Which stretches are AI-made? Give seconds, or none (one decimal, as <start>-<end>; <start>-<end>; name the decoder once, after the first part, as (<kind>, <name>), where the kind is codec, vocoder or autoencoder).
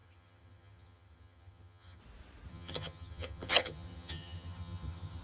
0.0-2.0 (vocoder, HiFi-GAN); 2.5-5.2